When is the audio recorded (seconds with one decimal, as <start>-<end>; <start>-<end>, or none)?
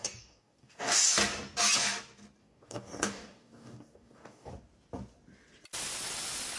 1.0-2.4; 4.5-6.6